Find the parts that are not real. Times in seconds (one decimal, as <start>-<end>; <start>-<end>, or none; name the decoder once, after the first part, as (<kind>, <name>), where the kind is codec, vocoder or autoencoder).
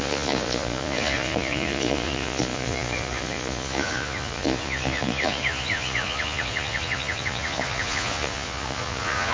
0.0-9.3 (vocoder, Vocos)